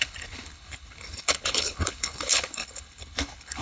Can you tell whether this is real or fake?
fake